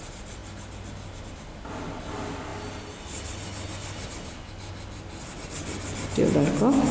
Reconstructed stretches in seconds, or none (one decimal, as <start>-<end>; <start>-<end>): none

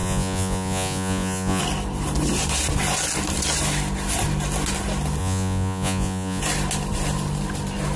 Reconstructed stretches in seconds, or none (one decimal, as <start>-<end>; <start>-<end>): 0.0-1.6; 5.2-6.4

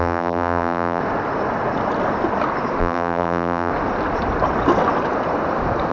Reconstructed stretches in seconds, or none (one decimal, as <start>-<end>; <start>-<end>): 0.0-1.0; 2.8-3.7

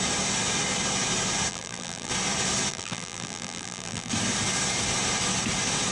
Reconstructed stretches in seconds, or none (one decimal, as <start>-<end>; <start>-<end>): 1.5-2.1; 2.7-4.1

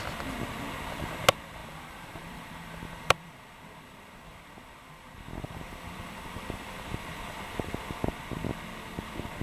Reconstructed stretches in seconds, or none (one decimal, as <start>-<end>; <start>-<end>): 1.6-6.8

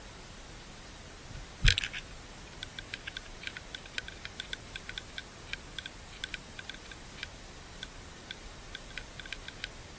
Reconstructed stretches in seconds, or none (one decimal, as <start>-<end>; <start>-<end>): none